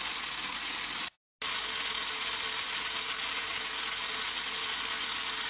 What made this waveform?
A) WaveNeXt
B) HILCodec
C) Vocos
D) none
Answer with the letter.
D